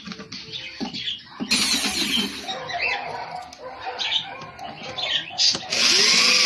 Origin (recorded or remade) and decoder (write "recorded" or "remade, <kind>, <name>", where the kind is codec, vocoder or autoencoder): recorded